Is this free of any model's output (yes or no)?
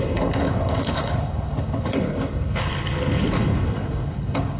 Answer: no